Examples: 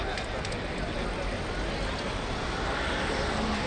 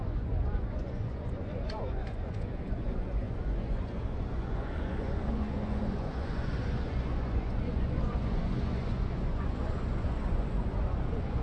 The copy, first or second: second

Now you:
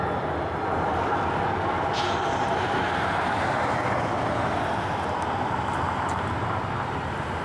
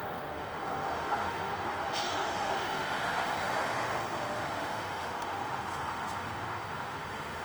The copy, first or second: second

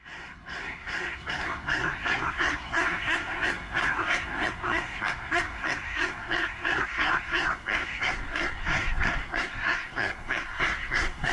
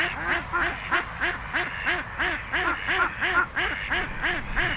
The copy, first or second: first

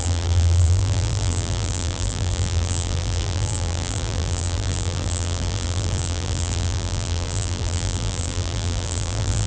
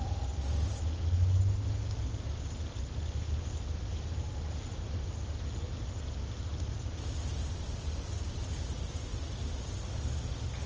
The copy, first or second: first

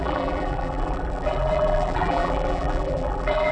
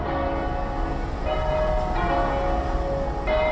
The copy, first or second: first